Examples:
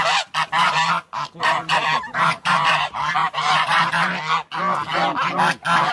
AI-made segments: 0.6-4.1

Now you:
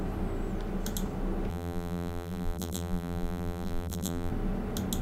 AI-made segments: 1.5-4.3

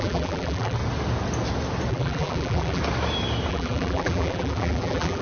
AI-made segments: 0.0-0.8; 1.9-2.8; 3.5-5.2

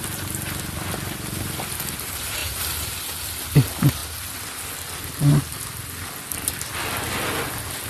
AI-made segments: 2.4-3.1

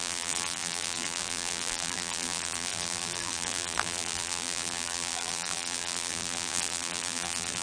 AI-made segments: 0.0-7.6

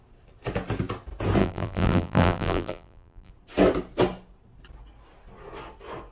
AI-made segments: 1.4-3.3